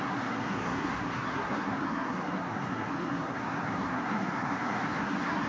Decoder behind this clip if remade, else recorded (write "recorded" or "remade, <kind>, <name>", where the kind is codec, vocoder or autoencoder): remade, codec, SNAC